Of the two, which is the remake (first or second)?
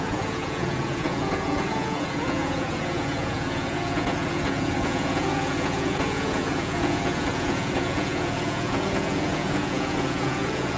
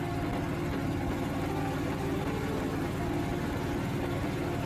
first